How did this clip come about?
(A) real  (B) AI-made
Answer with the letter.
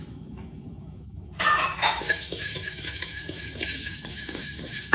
B